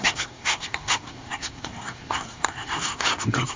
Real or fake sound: fake